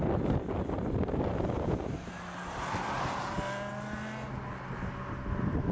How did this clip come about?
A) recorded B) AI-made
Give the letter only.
A